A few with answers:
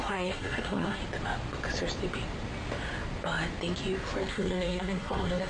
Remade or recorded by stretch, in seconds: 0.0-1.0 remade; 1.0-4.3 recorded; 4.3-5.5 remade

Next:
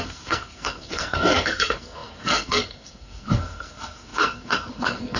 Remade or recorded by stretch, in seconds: 0.0-5.2 remade

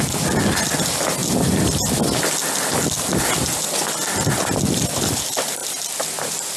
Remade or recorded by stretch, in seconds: 0.0-6.6 recorded

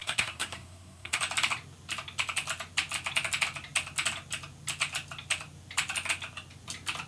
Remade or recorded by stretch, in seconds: 0.0-1.2 remade; 1.2-7.1 recorded